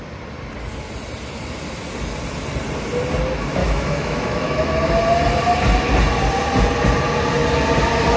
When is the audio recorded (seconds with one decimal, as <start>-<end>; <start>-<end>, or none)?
0.0-3.6; 4.7-8.2